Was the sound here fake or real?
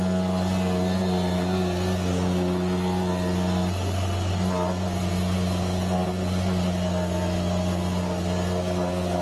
real